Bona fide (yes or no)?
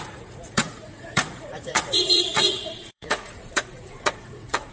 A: no